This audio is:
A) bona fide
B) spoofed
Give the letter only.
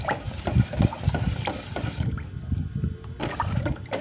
A